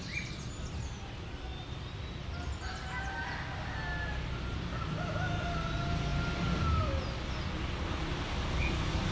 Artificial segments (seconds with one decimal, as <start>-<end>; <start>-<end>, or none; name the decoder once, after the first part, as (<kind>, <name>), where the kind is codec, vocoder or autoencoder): none

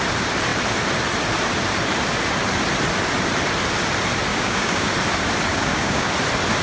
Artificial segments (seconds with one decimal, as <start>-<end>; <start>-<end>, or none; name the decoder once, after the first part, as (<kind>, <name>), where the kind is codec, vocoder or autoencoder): 4.3-4.9 (codec, DAC); 5.5-6.1

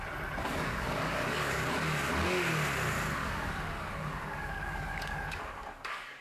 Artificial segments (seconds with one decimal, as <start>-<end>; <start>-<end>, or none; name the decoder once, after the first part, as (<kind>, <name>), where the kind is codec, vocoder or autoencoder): 0.4-2.1 (codec, DAC); 3.2-6.2

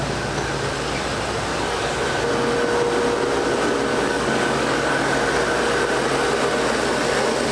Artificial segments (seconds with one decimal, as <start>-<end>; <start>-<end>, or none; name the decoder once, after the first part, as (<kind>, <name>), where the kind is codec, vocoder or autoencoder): 1.5-2.1 (codec, DAC); 3.9-5.0